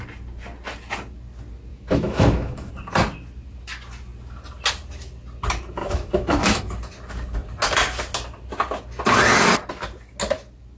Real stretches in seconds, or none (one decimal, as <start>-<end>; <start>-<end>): 0.0-1.7; 2.7-5.8; 6.6-10.8